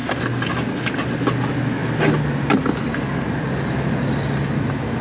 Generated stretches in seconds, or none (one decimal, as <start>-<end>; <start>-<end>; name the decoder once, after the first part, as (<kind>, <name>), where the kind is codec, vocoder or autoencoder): none